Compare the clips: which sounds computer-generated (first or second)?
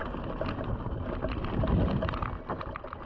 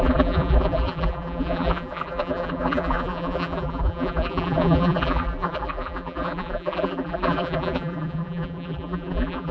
second